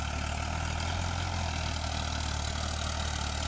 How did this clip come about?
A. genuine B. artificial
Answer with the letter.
A